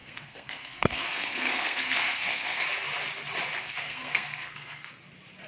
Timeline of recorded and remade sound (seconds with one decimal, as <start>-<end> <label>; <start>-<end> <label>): 0.0-2.6 remade; 2.6-3.6 recorded; 3.6-4.9 remade; 4.9-5.5 recorded